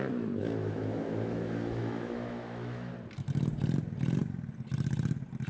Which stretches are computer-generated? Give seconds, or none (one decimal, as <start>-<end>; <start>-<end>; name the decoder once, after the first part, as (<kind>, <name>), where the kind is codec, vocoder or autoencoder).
0.4-2.9 (autoencoder, DAC-VAE)